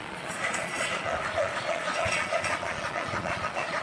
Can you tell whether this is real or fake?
fake